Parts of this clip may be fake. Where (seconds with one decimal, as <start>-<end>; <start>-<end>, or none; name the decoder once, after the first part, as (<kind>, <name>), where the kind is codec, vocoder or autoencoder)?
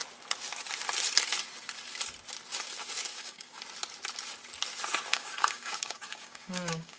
3.1-3.6 (codec, DAC); 5.1-7.0